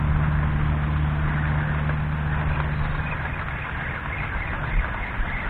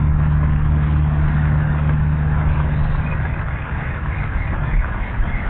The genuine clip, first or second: first